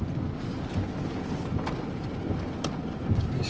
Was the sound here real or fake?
real